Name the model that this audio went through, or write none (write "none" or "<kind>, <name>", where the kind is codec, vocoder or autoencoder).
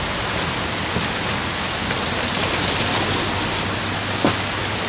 none